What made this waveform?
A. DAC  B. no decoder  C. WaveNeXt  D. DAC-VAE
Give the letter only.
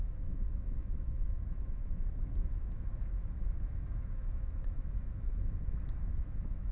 D